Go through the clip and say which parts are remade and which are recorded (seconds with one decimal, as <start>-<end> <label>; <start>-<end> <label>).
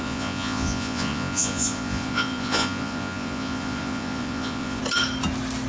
0.0-4.8 remade; 4.8-5.7 recorded